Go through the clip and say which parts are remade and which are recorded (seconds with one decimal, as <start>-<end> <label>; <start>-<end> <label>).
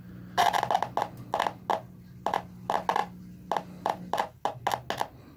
0.0-5.4 recorded